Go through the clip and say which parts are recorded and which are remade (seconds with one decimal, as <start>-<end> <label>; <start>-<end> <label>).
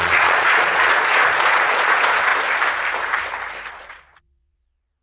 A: 0.0-2.3 remade; 2.3-3.7 recorded; 3.7-5.0 remade